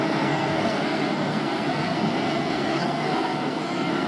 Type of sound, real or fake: fake